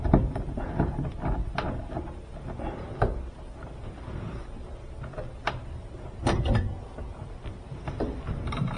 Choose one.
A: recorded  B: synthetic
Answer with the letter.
A